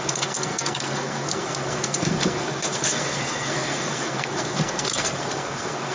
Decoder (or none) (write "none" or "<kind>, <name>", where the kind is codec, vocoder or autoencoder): codec, SNAC